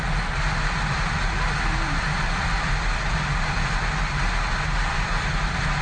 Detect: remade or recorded recorded